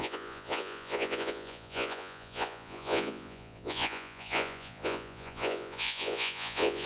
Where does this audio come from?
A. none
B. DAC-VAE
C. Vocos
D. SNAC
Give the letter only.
C